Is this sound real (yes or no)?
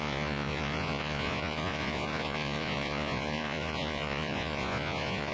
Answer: no